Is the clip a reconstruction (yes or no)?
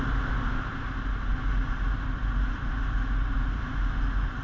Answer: no